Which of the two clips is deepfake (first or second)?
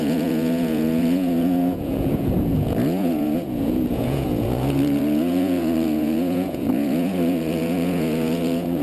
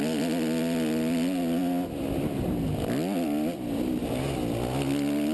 first